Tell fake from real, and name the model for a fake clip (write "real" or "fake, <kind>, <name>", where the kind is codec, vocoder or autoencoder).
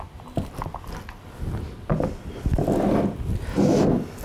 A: real